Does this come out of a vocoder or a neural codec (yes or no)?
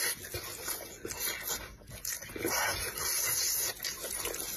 no